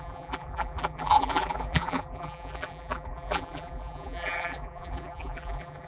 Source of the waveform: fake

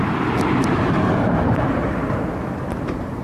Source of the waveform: fake